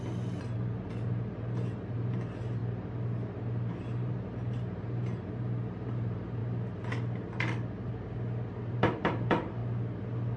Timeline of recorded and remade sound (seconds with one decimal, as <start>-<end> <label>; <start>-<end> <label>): 0.0-2.6 remade; 2.6-3.7 recorded; 3.7-6.4 remade; 6.4-8.7 recorded; 8.7-9.6 remade; 9.6-10.4 recorded